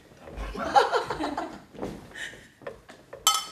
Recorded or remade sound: recorded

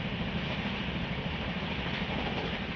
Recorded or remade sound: recorded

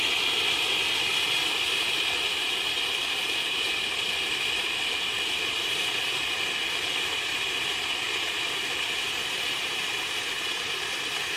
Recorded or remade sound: remade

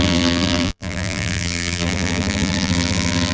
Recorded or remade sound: remade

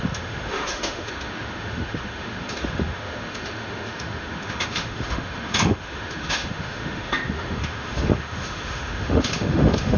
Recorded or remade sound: remade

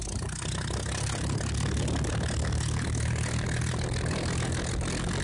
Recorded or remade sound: recorded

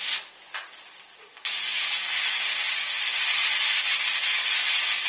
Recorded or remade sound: recorded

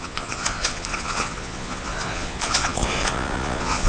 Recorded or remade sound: remade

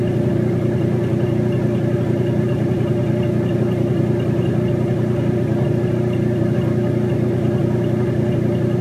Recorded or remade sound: recorded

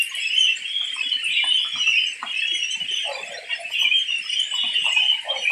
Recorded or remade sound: remade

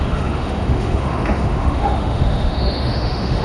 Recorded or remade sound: remade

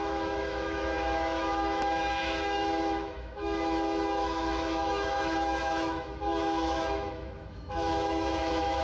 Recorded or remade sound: remade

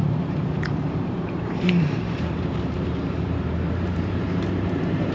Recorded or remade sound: remade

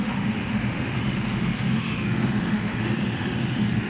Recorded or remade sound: remade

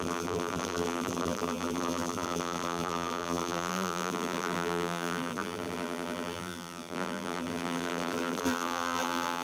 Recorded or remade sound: remade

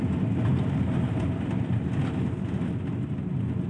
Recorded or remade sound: recorded